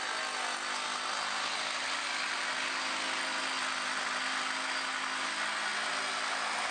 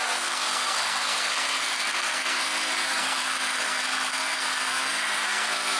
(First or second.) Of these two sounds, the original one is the first